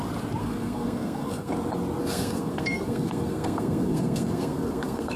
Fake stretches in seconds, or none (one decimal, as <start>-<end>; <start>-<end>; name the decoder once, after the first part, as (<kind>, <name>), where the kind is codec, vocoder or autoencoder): 0.4-1.5 (codec, SNAC); 2.0-5.2